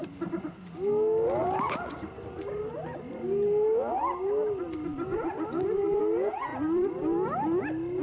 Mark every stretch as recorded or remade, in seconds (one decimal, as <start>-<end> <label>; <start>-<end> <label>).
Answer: 0.0-4.9 recorded; 4.9-6.0 remade; 6.0-6.5 recorded; 6.5-7.6 remade; 7.6-8.0 recorded